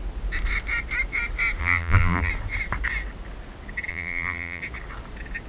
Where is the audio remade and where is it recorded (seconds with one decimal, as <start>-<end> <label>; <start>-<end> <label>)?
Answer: 0.0-1.6 recorded; 1.6-2.3 remade; 2.3-3.9 recorded; 3.9-4.6 remade; 4.6-5.5 recorded